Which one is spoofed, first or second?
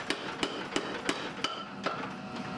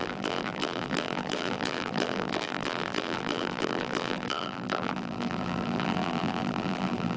second